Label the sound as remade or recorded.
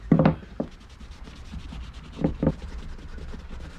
recorded